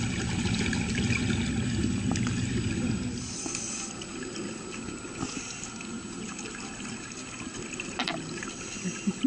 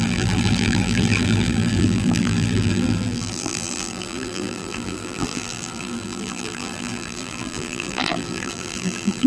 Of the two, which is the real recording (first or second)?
first